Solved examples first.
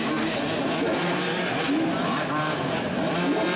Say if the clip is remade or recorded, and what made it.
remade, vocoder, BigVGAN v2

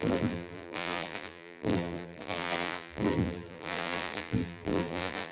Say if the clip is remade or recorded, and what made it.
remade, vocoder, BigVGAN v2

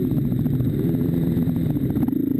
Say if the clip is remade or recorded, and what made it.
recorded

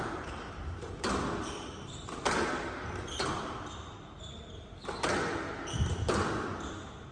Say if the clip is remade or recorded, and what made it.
remade, vocoder, BigVGAN v2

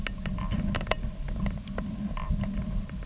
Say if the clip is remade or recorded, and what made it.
recorded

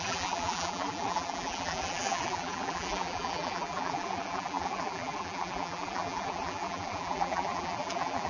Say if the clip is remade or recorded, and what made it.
remade, vocoder, BigVGAN v2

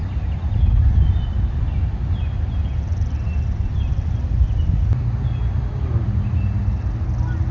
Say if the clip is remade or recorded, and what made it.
recorded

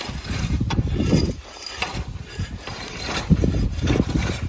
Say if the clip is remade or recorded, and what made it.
remade, vocoder, BigVGAN v2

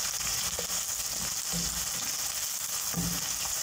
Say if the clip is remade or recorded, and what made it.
recorded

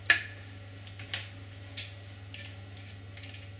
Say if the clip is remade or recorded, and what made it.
recorded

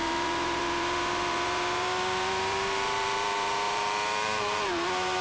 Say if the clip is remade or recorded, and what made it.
remade, vocoder, BigVGAN v2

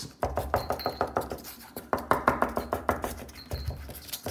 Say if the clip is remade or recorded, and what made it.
remade, vocoder, BigVGAN v2